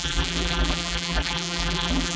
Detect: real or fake fake